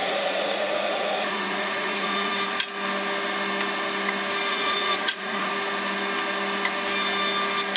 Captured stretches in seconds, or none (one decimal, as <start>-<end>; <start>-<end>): 2.3-4.5; 5.5-7.8